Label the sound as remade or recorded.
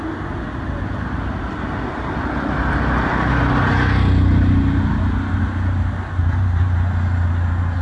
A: recorded